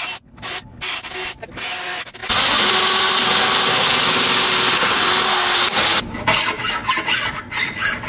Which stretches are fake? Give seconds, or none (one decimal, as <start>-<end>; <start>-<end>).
none

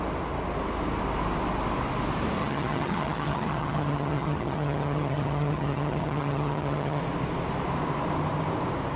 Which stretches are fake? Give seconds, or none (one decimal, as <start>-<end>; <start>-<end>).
2.4-7.0

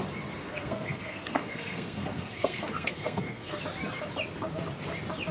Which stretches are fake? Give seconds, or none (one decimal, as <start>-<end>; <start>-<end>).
0.4-3.6

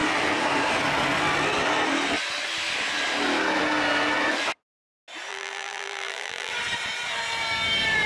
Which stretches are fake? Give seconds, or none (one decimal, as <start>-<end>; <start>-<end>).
5.3-6.5

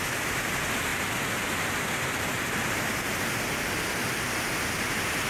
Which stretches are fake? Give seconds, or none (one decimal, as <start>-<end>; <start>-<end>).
none

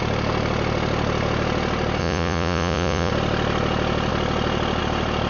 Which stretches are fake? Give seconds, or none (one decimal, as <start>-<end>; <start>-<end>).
2.0-3.1

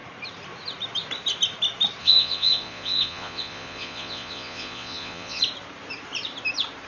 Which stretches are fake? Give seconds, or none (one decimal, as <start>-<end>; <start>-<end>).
2.0-5.4